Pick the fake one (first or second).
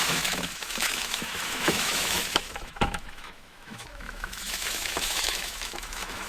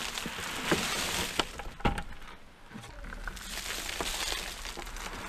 first